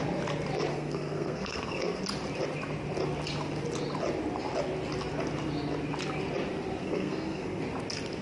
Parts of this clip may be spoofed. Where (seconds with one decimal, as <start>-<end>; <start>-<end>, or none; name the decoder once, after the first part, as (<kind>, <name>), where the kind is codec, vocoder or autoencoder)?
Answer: 0.7-2.0 (codec, SNAC); 6.8-7.6